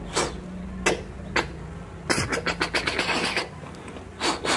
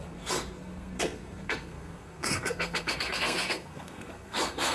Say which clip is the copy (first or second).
second